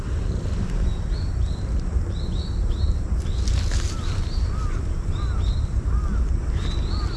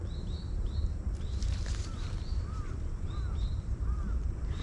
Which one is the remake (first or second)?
second